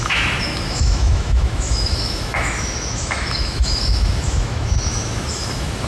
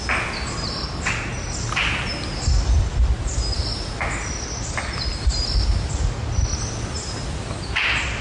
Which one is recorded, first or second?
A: second